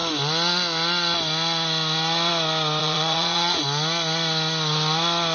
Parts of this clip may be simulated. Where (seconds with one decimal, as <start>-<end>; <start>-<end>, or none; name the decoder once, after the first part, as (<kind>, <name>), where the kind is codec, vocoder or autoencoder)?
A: 2.8-3.6 (vocoder, Vocos)